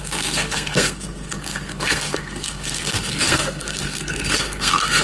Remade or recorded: remade